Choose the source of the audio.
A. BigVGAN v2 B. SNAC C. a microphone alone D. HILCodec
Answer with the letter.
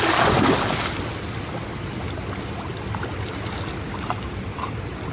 C